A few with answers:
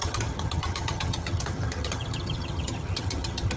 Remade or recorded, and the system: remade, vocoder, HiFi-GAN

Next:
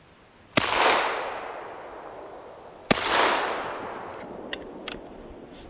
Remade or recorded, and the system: recorded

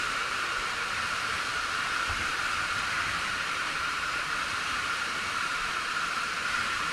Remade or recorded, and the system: remade, vocoder, BigVGAN v2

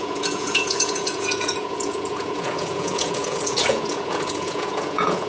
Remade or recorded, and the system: remade, vocoder, Vocos